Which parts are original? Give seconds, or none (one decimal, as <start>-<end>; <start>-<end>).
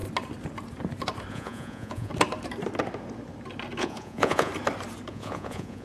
0.0-1.3; 2.1-3.8; 4.5-5.1